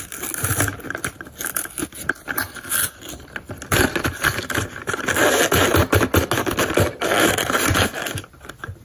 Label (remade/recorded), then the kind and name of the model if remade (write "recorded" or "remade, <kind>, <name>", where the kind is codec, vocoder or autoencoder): recorded